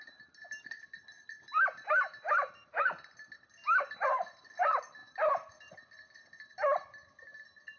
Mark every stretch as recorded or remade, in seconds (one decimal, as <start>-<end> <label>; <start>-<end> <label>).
0.0-7.8 recorded